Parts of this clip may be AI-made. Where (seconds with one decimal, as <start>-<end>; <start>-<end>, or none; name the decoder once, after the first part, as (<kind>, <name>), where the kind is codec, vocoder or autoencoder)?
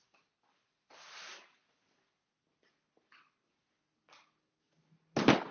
none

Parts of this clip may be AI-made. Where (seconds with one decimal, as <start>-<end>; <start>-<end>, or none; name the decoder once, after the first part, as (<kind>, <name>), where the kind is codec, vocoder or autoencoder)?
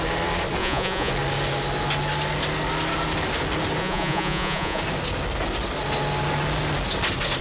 0.6-1.1 (vocoder, Vocos); 3.8-4.8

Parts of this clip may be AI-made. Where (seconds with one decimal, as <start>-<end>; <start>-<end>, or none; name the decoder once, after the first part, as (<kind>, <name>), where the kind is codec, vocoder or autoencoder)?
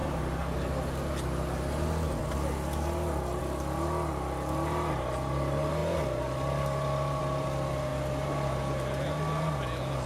none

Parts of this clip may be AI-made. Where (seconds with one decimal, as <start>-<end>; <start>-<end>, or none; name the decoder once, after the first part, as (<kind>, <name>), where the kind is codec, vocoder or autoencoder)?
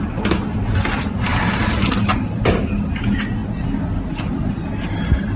none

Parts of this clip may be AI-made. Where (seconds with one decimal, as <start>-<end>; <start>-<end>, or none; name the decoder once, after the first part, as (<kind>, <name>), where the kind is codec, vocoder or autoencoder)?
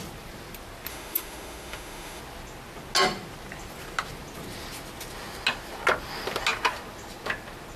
0.9-2.2 (autoencoder, DAC-VAE)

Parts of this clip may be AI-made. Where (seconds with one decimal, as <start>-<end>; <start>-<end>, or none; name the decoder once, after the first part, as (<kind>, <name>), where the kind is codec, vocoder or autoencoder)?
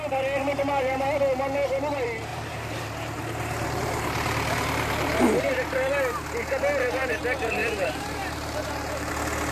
2.3-5.3 (vocoder, BigVGAN v2); 7.6-9.1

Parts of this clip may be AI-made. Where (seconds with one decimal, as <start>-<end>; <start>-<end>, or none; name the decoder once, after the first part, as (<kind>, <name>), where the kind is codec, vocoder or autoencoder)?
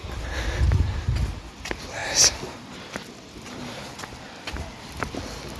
none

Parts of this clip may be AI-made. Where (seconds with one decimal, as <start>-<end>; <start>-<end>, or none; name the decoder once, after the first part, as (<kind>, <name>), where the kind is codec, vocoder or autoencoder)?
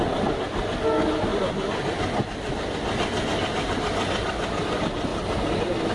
none